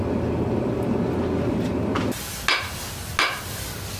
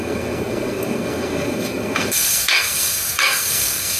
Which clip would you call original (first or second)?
first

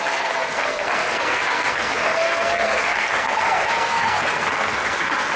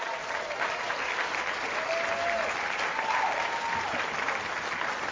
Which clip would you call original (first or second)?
second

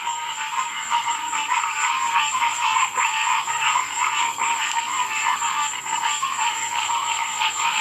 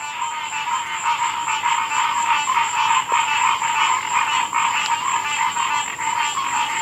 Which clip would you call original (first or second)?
second